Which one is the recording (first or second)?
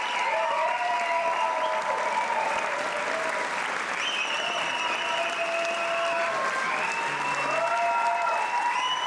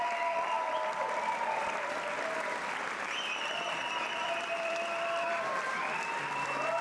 first